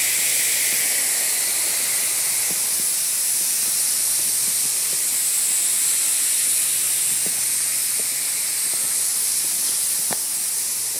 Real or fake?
real